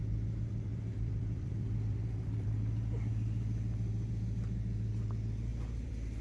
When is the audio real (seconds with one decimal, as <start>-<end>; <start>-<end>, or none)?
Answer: 0.0-0.7; 4.1-5.5